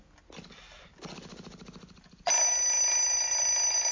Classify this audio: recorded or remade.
recorded